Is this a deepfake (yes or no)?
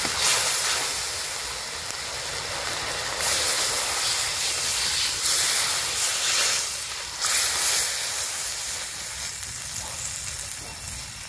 no